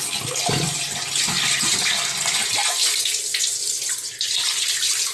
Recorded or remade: recorded